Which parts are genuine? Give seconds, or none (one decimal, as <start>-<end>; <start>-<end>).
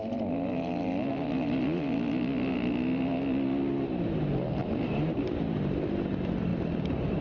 0.0-4.6; 5.3-7.2